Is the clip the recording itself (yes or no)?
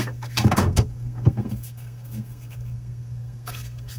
no